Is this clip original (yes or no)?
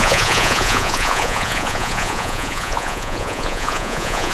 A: no